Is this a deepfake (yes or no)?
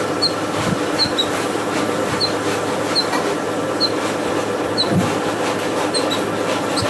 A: no